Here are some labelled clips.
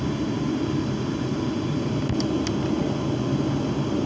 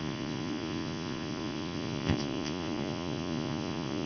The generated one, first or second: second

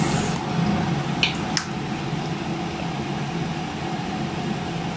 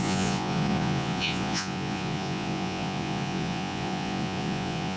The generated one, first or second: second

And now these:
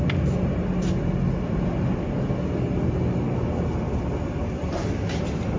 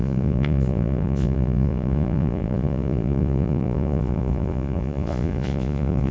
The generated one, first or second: second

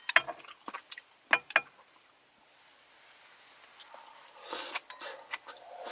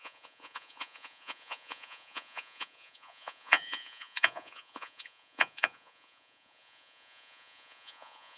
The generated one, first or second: second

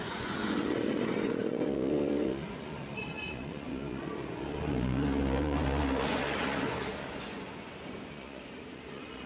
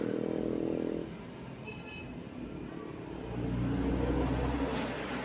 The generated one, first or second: first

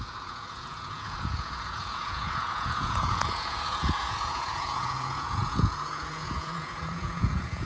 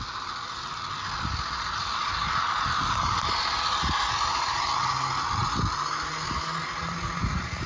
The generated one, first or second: first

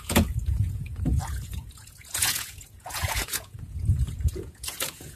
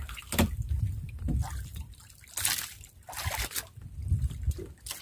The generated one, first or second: first